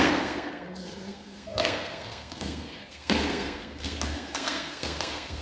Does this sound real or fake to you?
fake